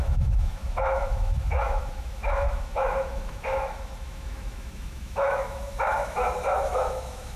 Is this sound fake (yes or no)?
yes